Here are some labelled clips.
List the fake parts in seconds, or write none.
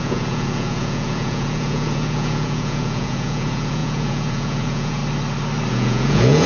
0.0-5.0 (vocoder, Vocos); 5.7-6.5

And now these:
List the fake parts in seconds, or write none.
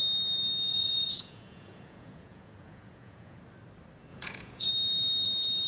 0.7-3.4 (vocoder, Vocos); 4.1-4.7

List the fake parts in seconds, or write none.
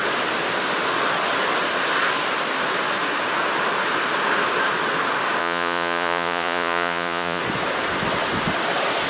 5.4-7.4 (vocoder, Vocos)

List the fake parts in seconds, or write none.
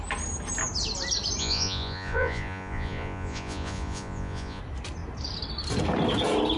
1.4-4.6 (vocoder, Vocos)